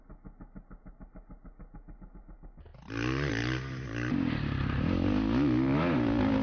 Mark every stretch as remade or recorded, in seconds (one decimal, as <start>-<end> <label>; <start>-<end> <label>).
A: 0.0-6.4 recorded